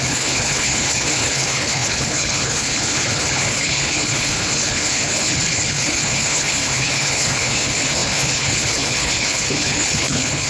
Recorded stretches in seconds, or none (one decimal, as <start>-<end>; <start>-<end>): none